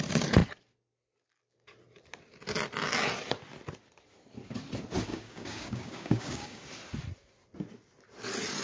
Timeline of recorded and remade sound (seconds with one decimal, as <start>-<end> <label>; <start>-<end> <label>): 0.0-5.1 recorded; 5.1-6.6 remade; 6.6-8.6 recorded